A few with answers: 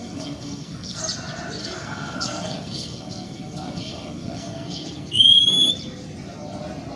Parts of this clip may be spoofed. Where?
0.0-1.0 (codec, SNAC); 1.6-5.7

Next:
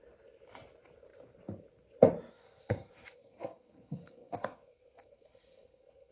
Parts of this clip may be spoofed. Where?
2.3-6.1 (codec, SNAC)

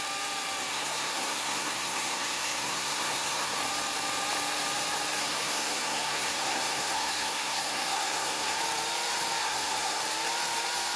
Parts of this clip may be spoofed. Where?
0.7-3.6 (codec, SNAC); 5.2-8.6; 9.4-10.0

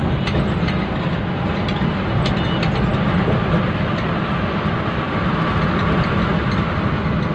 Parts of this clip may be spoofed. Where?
none

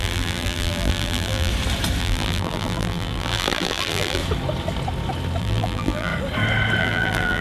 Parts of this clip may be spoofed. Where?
0.0-1.5 (vocoder, BigVGAN v2); 2.0-4.2; 5.4-6.1; 6.8-7.4

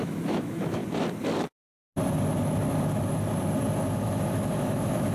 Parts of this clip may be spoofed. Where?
0.0-0.8 (autoencoder, DAC-VAE); 3.9-5.1

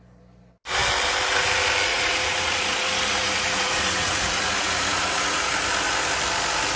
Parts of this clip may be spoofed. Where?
1.9-5.5 (vocoder, Vocos)

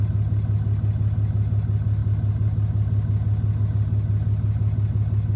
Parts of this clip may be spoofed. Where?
none